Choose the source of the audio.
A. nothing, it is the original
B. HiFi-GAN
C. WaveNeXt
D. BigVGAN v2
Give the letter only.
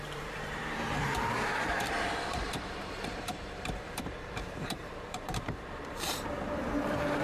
D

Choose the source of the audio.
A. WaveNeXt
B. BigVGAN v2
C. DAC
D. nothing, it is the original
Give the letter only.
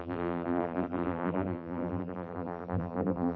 B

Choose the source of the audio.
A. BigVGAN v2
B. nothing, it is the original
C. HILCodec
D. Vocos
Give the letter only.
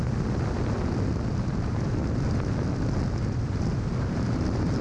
B